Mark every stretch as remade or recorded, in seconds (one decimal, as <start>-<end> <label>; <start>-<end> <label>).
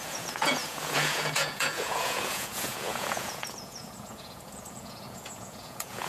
0.0-6.1 remade